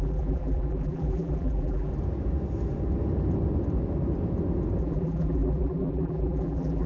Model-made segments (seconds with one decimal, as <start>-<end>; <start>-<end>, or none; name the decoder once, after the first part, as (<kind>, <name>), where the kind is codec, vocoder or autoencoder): 0.0-1.9 (vocoder, BigVGAN v2); 4.8-6.9